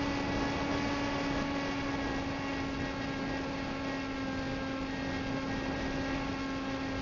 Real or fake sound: real